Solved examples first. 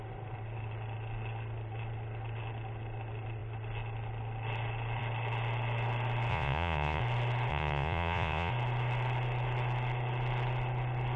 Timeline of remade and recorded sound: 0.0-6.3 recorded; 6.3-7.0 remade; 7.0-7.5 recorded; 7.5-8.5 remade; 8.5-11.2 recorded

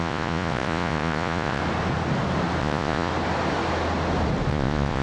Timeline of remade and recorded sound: 0.0-1.6 remade; 1.6-2.6 recorded; 2.6-3.1 remade; 3.1-4.5 recorded; 4.5-5.0 remade

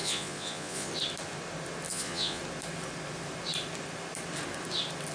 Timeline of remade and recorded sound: 0.0-0.9 remade; 0.9-1.9 recorded; 1.9-2.4 remade; 2.4-5.1 recorded

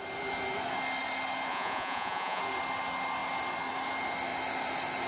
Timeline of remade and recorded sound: 0.0-1.5 recorded; 1.5-2.4 remade; 2.4-5.1 recorded

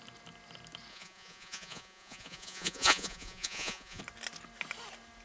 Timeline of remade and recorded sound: 0.0-0.9 recorded; 0.9-4.0 remade; 4.0-5.2 recorded

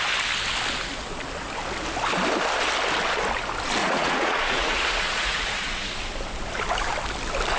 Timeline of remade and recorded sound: 0.0-3.8 recorded; 3.8-5.9 remade; 5.9-7.6 recorded

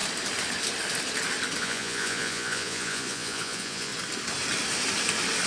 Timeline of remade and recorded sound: 0.0-1.6 recorded; 1.6-3.9 remade; 3.9-5.5 recorded